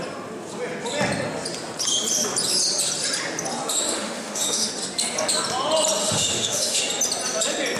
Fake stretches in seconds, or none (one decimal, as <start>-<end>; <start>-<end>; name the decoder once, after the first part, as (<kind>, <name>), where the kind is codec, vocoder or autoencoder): 3.7-4.7 (autoencoder, DAC-VAE); 6.0-6.8